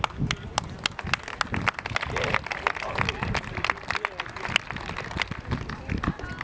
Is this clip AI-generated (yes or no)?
no